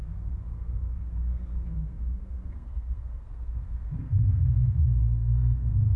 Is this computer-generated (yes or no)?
yes